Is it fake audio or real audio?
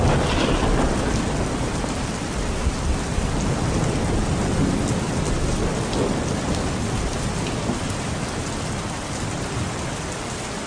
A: real